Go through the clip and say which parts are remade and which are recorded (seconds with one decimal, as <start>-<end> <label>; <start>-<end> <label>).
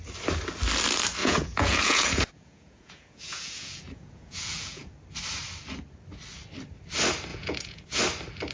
0.0-1.2 recorded; 1.2-4.9 remade; 4.9-7.3 recorded; 7.3-8.0 remade; 8.0-8.5 recorded